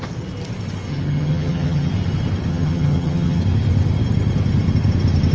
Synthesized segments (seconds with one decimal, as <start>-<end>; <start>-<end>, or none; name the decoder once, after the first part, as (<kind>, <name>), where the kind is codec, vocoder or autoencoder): 0.9-1.9 (vocoder, HiFi-GAN); 2.5-3.4